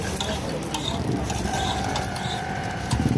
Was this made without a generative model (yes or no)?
no